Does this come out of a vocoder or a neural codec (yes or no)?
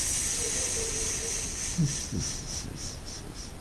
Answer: no